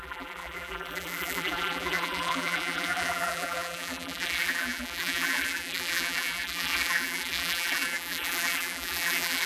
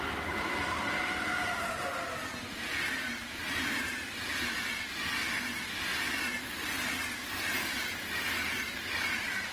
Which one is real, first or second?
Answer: second